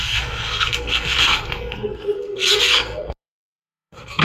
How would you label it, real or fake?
fake